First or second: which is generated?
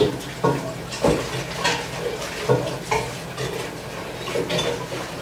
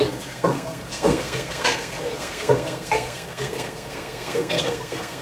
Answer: second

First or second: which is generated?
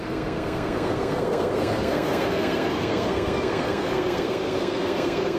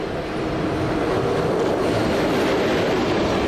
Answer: first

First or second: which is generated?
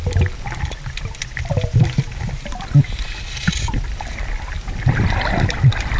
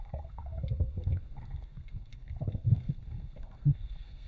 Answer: second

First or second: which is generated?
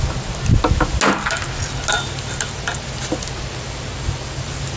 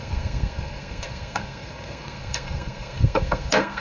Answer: second